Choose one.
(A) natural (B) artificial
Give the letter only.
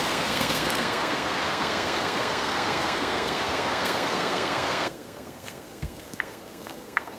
B